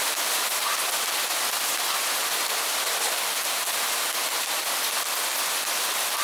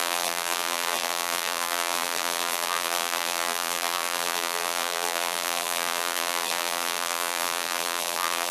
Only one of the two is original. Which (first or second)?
first